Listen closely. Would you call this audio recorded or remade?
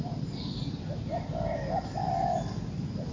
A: recorded